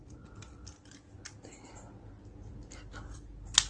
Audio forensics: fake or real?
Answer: real